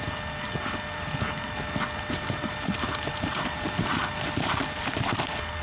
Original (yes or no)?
yes